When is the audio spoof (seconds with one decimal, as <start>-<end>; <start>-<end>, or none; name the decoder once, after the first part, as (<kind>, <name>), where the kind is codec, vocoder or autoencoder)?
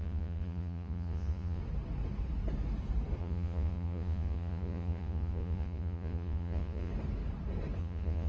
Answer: 0.0-1.6 (vocoder, Vocos); 3.2-6.9; 7.8-8.3